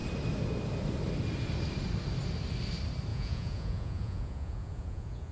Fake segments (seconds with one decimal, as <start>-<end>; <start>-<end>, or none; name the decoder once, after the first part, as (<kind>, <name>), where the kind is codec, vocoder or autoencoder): 3.1-5.3 (vocoder, Vocos)